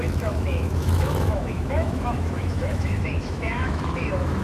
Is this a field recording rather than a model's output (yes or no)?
no